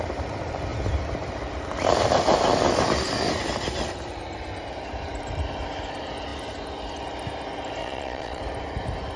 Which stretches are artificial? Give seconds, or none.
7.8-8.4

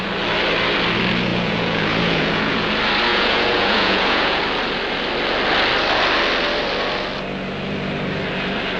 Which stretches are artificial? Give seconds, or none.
1.3-2.7; 3.1-4.4

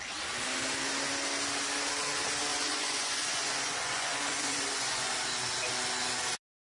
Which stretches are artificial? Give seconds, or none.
2.5-5.1

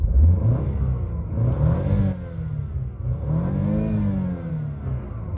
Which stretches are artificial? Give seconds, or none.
none

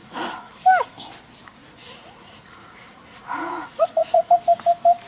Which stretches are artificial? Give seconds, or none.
0.0-0.6; 1.6-4.3